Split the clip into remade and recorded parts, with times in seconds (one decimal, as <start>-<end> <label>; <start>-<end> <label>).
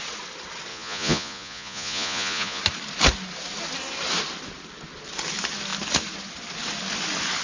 0.0-0.7 recorded; 0.7-2.6 remade; 2.6-7.4 recorded